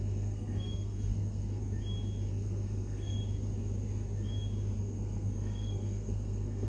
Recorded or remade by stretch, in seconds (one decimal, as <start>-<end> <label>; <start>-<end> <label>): 0.0-1.6 remade; 1.6-2.3 recorded; 2.3-3.2 remade; 3.2-4.8 recorded; 4.8-6.7 remade